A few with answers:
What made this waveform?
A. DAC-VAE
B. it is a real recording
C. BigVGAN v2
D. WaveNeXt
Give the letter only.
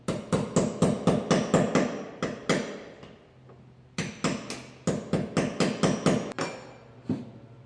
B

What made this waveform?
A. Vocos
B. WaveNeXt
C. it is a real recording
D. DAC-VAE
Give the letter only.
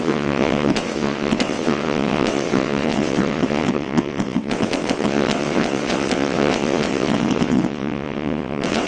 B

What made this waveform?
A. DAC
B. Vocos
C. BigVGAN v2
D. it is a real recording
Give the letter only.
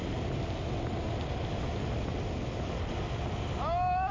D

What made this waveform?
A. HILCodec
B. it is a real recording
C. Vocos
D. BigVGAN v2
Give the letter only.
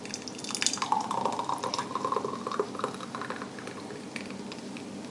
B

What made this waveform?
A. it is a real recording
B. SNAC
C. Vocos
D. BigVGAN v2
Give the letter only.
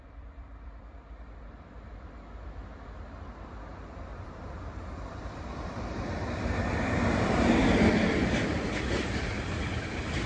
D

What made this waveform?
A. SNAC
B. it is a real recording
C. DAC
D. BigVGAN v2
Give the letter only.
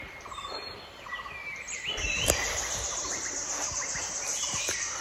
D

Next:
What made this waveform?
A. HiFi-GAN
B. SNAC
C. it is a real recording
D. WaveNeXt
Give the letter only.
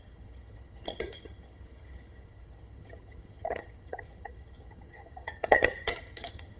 A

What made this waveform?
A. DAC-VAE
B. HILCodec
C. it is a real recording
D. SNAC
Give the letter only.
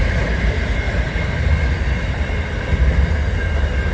C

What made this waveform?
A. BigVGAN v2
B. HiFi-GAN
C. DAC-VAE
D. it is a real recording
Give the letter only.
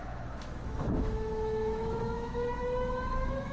C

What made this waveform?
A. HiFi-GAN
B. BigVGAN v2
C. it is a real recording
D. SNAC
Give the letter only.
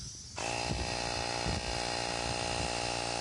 C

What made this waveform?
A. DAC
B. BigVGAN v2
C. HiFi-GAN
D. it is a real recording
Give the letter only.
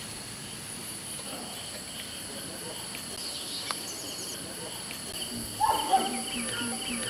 D